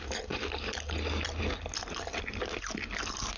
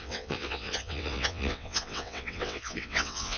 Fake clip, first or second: second